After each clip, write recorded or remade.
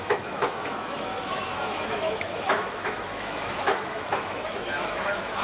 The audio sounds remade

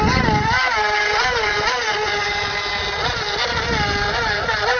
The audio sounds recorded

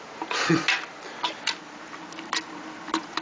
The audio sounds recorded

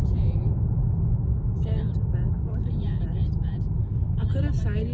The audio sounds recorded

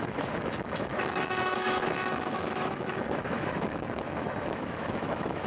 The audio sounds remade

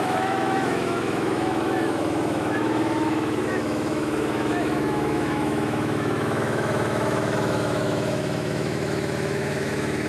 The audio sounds remade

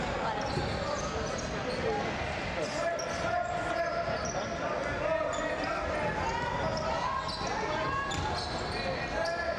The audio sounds recorded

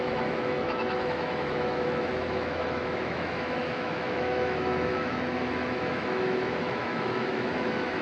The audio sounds remade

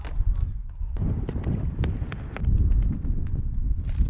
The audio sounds recorded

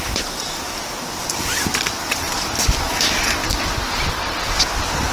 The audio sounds recorded